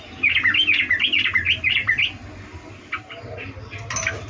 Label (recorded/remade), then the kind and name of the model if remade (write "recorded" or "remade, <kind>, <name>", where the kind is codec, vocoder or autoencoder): recorded